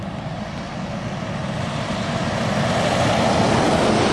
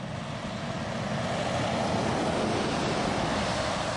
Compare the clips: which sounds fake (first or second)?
first